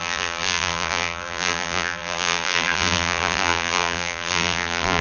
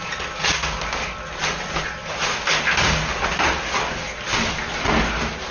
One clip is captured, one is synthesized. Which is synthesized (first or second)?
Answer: first